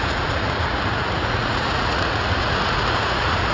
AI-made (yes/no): yes